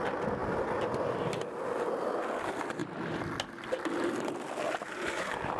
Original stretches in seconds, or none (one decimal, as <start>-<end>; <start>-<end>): 0.0-5.6